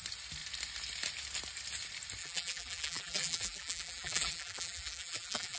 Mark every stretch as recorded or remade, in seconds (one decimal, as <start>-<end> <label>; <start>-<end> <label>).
0.0-2.2 recorded; 2.2-5.6 remade